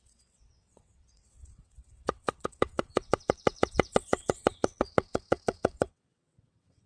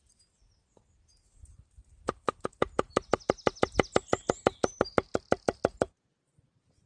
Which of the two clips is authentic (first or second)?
second